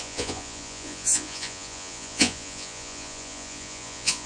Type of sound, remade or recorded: remade